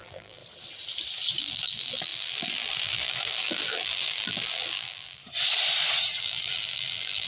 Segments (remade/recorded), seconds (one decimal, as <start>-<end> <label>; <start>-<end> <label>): 0.0-0.4 remade; 0.4-1.4 recorded; 1.4-5.2 remade; 5.2-6.2 recorded; 6.2-7.3 remade